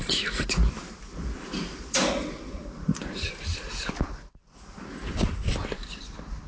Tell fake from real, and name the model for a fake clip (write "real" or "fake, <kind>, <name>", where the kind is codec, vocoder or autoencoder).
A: fake, vocoder, BigVGAN v2